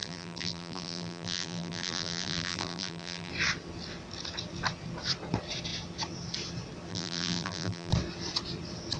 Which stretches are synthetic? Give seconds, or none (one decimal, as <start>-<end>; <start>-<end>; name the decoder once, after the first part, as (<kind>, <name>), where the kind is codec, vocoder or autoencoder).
0.0-3.3 (vocoder, BigVGAN v2); 6.9-7.9